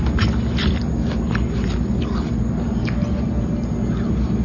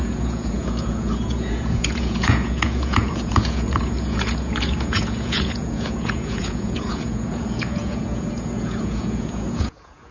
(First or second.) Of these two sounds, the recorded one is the first